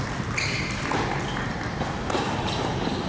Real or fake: real